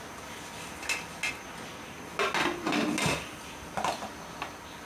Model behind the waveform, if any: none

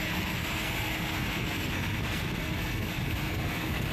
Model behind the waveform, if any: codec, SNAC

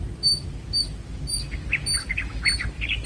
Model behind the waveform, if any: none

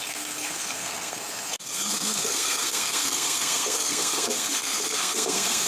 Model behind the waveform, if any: codec, SNAC